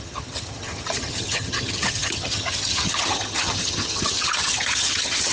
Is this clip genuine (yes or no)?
no